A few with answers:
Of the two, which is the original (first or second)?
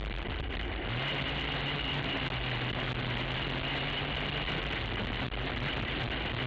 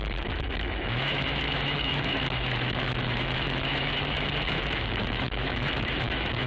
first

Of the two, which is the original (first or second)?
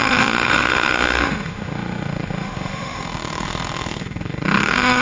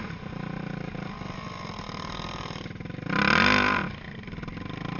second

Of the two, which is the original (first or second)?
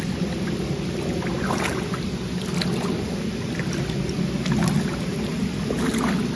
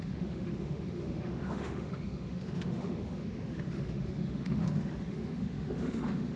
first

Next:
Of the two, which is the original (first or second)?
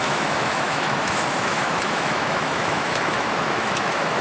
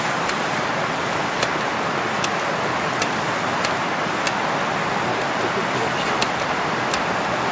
second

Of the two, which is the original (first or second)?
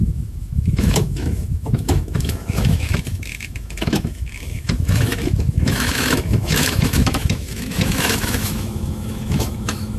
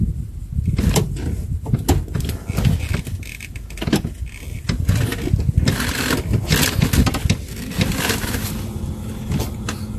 second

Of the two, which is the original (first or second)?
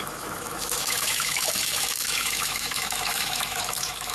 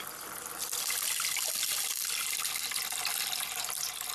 second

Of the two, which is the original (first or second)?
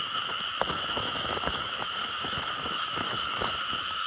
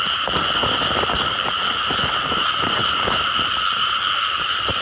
second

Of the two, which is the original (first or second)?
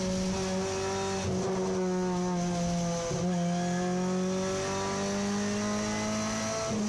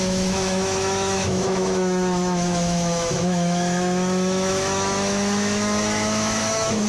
first